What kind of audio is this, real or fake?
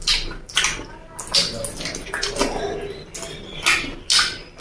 real